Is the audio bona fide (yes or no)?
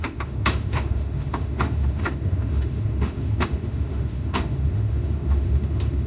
no